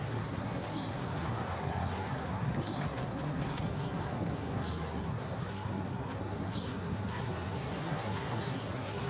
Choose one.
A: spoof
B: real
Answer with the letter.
A